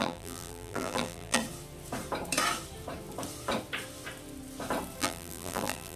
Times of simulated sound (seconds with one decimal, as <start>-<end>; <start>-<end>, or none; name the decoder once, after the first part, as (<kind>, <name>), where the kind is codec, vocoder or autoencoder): 0.0-1.4 (vocoder, BigVGAN v2); 5.0-6.0